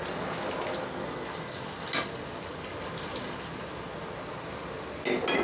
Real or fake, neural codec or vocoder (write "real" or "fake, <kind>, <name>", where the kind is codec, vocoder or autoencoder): real